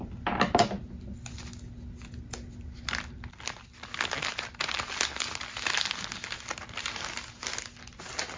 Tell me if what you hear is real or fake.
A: real